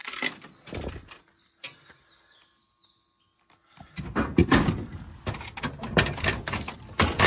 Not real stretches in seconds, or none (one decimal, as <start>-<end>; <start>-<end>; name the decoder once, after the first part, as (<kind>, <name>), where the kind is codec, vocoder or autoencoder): 0.0-1.2 (vocoder, BigVGAN v2)